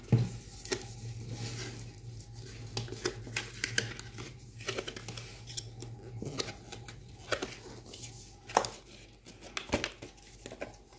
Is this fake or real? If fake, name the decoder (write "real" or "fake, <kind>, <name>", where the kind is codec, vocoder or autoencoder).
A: real